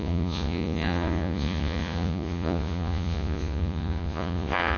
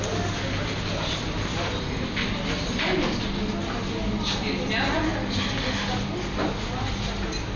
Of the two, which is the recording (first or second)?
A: second